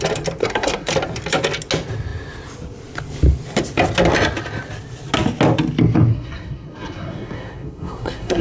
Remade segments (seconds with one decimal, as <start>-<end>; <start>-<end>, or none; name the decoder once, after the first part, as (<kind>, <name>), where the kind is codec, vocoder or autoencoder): 0.4-0.9 (codec, SNAC); 6.1-8.4